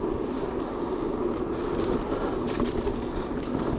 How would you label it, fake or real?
real